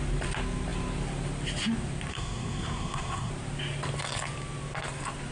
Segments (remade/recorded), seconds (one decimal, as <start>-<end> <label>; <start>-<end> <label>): 0.0-2.1 recorded; 2.1-3.3 remade; 3.3-5.3 recorded